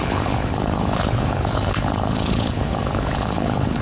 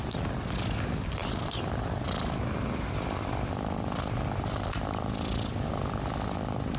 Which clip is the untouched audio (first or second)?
second